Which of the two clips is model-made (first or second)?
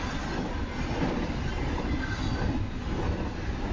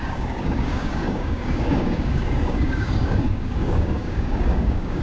second